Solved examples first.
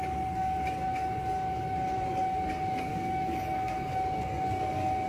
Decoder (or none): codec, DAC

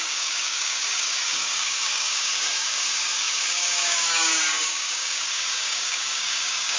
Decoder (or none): codec, DAC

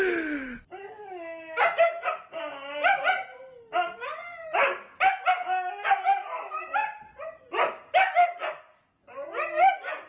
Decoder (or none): none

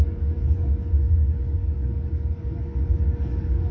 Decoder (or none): codec, DAC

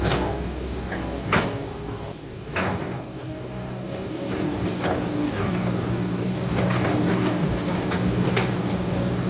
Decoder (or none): codec, DAC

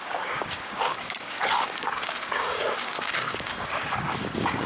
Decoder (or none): codec, DAC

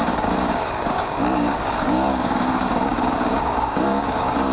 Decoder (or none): codec, DAC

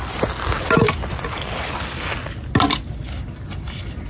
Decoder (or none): none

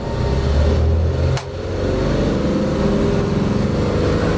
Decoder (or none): none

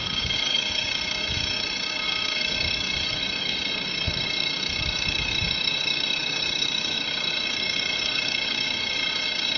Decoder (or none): codec, DAC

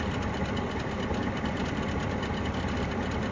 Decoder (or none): none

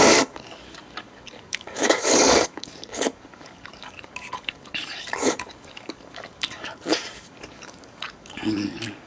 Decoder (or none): codec, DAC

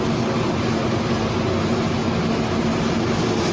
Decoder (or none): none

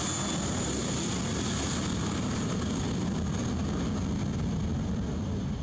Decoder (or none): none